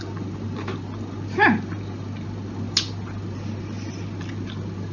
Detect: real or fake real